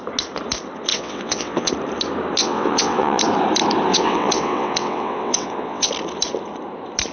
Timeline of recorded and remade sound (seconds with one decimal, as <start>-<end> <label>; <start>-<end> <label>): 0.0-0.9 recorded; 0.9-1.7 remade; 1.7-2.4 recorded; 2.4-3.2 remade; 3.2-3.9 recorded; 3.9-5.9 remade; 5.9-7.1 recorded